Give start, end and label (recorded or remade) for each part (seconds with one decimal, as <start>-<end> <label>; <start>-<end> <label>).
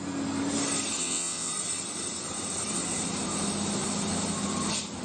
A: 0.0-1.0 recorded; 1.0-1.5 remade; 1.5-5.0 recorded